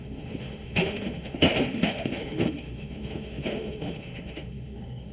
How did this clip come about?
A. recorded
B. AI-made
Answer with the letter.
B